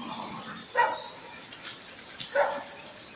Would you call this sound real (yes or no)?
yes